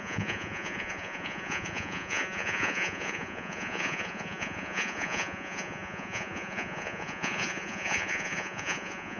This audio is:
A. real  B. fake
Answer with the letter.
B